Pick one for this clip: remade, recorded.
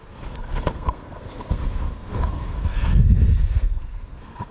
remade